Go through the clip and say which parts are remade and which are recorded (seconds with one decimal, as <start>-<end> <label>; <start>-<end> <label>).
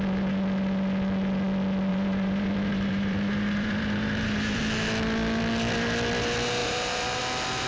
0.0-1.9 recorded; 1.9-4.6 remade; 4.6-6.6 recorded; 6.6-7.2 remade; 7.2-7.7 recorded